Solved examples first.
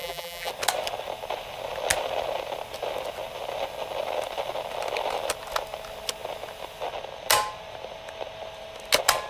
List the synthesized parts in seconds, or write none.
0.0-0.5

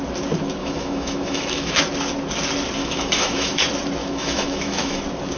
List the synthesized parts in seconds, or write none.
0.6-1.8; 2.8-3.6; 4.0-5.0

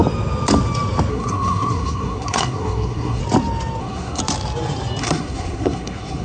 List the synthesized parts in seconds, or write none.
1.1-3.2; 3.8-4.2; 5.0-6.2

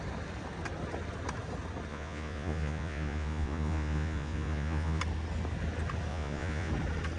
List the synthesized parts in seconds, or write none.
1.9-5.0; 6.1-6.7

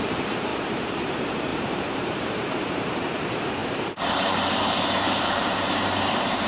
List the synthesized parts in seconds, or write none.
0.0-6.5

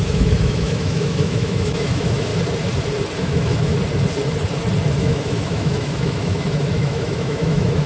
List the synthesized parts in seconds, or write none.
0.0-2.3; 3.2-3.7; 5.0-7.9

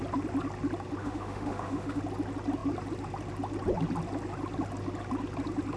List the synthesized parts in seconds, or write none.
1.0-2.0

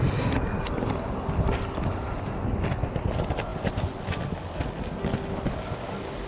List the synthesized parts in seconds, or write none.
none